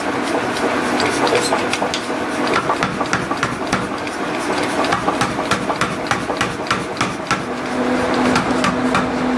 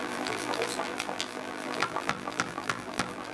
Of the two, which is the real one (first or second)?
first